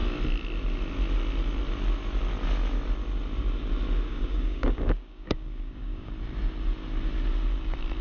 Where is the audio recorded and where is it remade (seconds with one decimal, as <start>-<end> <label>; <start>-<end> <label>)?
0.0-4.1 recorded; 4.1-6.1 remade; 6.1-8.0 recorded